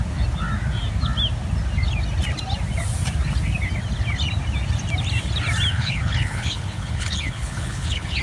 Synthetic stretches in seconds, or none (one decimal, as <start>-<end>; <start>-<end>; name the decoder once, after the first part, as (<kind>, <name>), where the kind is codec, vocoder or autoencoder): 5.7-8.2 (codec, HILCodec)